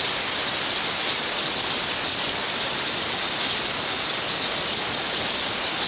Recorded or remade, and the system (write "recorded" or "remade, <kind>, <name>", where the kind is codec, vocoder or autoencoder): recorded